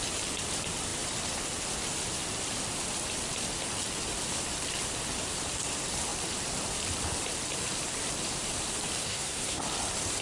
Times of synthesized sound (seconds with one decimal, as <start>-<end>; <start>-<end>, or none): 9.0-9.6